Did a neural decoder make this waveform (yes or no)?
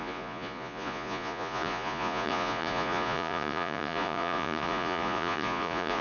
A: yes